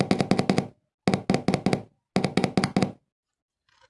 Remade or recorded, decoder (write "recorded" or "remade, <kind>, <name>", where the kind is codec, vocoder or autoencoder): recorded